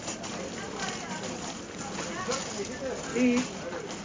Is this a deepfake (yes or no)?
no